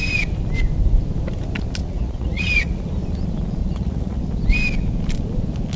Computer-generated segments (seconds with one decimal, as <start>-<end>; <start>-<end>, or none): 1.8-2.9; 3.6-4.2